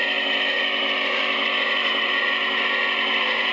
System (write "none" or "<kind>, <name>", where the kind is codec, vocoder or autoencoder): none